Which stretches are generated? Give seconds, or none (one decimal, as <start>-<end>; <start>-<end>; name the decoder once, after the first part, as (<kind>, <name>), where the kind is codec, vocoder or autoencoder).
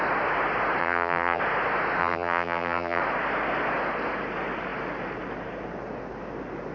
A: 0.8-1.4 (vocoder, BigVGAN v2); 2.0-3.0